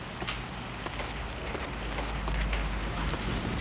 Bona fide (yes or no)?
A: yes